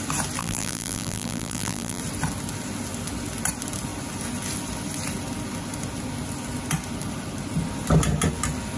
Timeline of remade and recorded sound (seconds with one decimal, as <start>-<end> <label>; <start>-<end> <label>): 0.0-0.4 recorded; 0.4-2.0 remade; 2.0-8.8 recorded